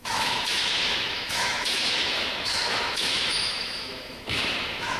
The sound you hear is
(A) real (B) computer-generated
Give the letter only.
B